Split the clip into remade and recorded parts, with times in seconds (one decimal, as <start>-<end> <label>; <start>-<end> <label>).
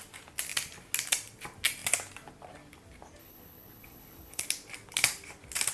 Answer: 0.0-3.2 recorded; 3.2-4.4 remade; 4.4-5.7 recorded